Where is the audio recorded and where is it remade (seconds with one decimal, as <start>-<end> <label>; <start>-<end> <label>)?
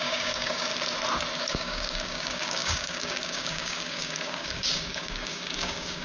0.0-0.7 remade; 0.7-1.4 recorded; 1.4-6.0 remade